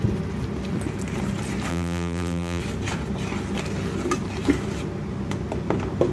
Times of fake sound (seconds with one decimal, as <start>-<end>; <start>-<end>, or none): 1.7-2.6